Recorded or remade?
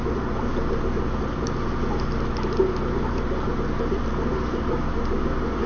recorded